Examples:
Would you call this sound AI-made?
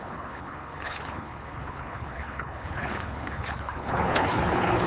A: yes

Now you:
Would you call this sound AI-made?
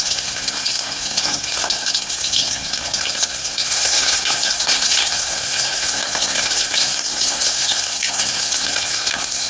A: yes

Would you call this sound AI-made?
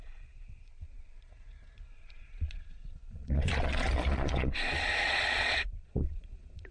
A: yes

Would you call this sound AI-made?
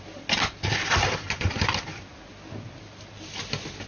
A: no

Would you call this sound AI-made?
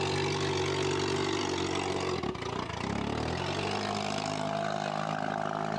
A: no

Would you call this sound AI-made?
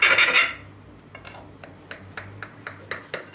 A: no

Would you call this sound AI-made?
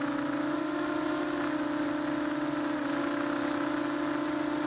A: no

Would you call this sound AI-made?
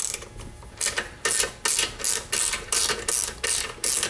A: no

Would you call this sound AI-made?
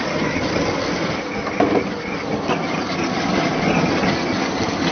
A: no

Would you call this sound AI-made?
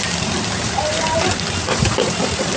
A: no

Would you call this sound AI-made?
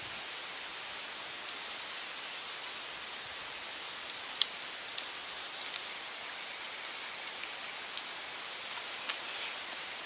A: no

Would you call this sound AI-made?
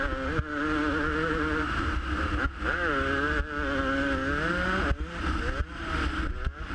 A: no